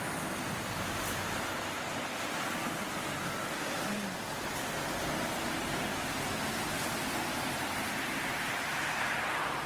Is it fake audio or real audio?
real